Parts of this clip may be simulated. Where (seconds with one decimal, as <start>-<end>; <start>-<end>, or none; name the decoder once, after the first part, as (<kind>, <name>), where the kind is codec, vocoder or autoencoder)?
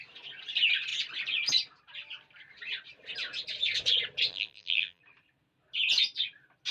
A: 4.3-5.0 (vocoder, BigVGAN v2)